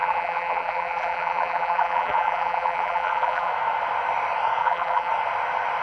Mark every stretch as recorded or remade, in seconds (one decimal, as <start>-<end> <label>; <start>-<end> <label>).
0.0-3.5 remade; 3.5-4.6 recorded; 4.6-5.1 remade; 5.1-5.8 recorded

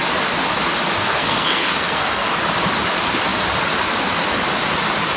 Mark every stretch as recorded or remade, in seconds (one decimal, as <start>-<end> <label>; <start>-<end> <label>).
0.0-1.0 recorded; 1.0-2.3 remade; 2.3-5.2 recorded